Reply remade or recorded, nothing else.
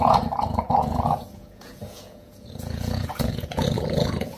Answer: remade